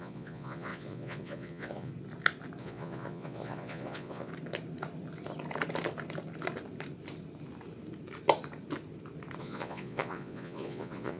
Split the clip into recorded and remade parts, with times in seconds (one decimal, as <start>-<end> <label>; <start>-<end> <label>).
0.0-1.9 remade; 1.9-2.6 recorded; 2.6-4.3 remade; 4.3-9.4 recorded; 9.4-11.2 remade